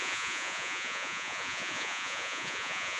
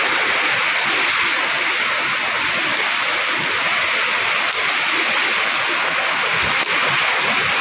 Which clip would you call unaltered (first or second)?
second